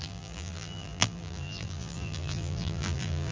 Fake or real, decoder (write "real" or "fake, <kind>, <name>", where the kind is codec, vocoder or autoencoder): fake, vocoder, BigVGAN v2